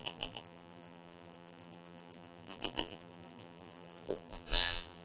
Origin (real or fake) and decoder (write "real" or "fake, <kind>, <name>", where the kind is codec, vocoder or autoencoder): fake, vocoder, BigVGAN v2